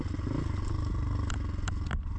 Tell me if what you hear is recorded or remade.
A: recorded